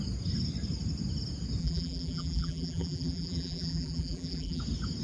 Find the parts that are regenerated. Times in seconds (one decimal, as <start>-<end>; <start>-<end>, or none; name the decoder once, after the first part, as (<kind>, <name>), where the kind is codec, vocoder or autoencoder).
1.6-4.6 (vocoder, BigVGAN v2)